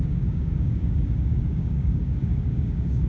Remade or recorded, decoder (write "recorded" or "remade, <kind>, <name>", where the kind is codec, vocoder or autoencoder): remade, codec, DAC